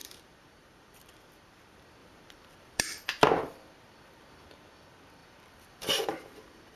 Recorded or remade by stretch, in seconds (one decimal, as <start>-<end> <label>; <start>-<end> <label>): 0.0-1.6 remade; 1.6-2.0 recorded; 2.0-3.3 remade; 3.3-5.2 recorded; 5.2-6.8 remade